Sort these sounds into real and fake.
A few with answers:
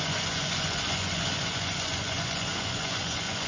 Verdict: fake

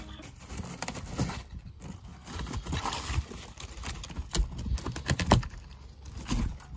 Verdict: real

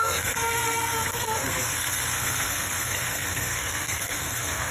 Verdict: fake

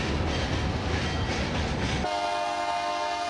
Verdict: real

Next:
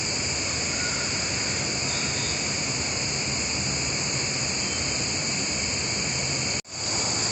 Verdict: real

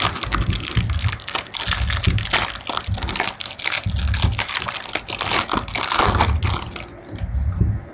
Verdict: real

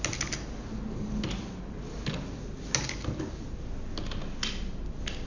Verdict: real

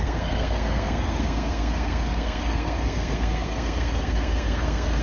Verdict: fake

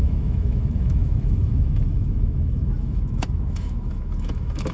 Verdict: fake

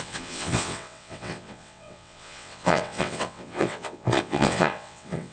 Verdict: fake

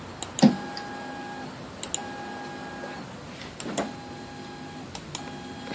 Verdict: real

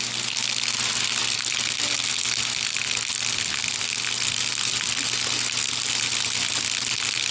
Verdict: real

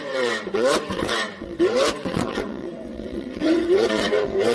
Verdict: fake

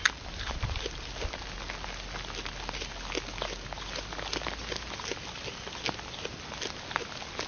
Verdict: real